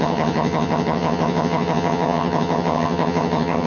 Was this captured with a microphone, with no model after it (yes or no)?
no